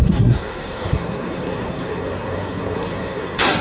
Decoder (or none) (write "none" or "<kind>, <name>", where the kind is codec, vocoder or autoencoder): codec, SNAC